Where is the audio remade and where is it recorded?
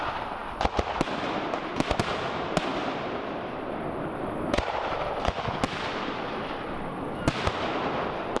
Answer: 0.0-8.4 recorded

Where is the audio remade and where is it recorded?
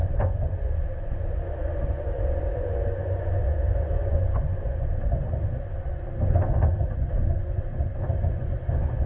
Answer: 0.0-9.1 remade